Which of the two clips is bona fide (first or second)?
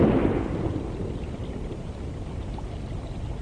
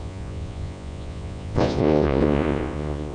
first